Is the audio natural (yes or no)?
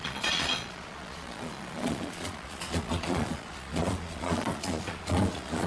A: no